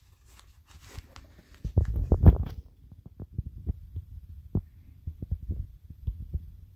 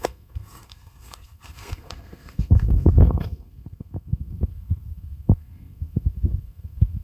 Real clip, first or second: first